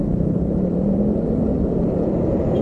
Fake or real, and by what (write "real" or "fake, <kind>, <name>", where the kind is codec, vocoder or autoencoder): fake, vocoder, BigVGAN v2